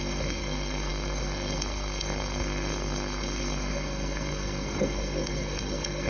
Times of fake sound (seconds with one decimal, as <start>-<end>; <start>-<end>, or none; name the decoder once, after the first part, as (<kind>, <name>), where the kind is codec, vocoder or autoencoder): 0.0-6.1 (codec, SNAC)